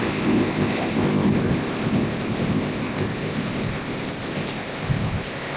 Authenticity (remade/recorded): remade